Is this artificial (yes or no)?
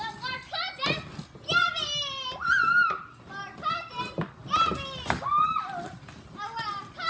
no